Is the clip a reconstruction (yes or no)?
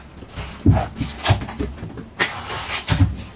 no